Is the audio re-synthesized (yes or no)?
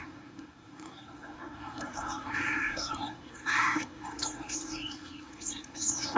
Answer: yes